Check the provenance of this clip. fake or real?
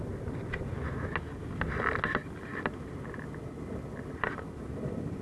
real